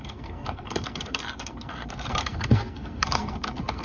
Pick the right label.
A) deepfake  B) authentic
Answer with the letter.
A